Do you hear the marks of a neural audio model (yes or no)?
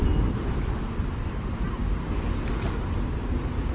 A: no